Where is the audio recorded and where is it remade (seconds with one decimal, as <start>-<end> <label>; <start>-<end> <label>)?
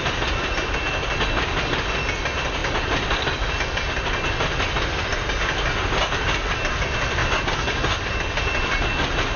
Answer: 0.0-9.4 recorded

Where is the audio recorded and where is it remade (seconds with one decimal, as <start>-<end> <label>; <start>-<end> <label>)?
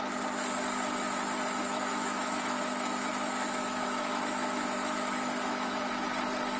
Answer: 0.0-1.9 recorded; 1.9-5.9 remade; 5.9-6.6 recorded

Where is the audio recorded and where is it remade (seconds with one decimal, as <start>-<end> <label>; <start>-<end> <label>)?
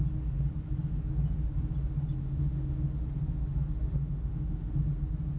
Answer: 0.0-2.2 recorded; 2.2-2.9 remade; 2.9-4.0 recorded; 4.0-4.8 remade; 4.8-5.4 recorded